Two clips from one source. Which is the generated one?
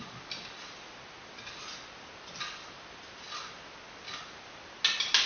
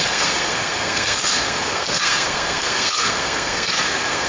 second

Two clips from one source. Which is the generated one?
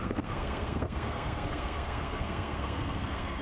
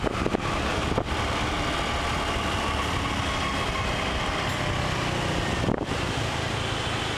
first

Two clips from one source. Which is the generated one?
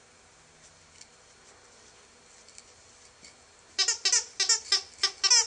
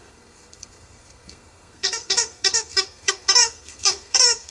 second